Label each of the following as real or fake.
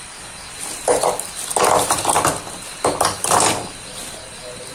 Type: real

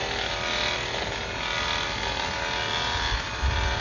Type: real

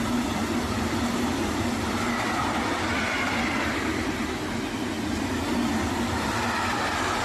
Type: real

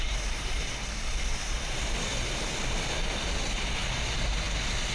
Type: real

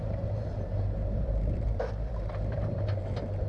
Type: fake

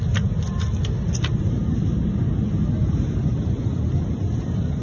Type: real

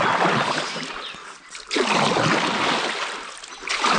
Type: real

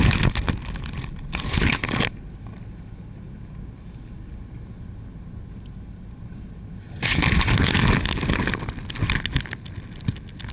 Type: real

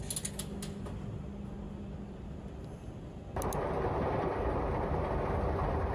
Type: real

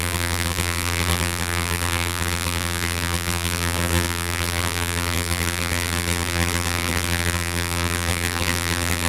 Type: fake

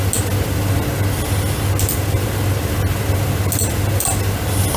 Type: real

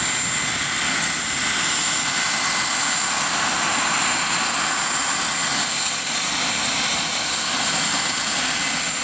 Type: real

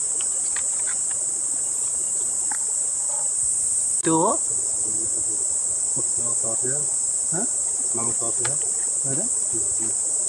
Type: real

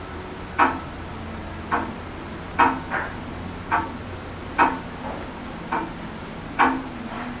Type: real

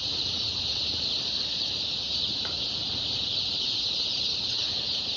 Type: fake